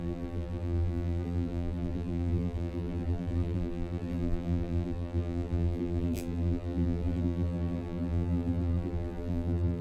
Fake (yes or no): yes